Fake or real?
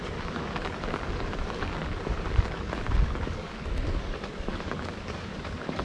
fake